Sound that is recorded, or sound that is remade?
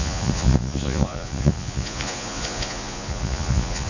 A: remade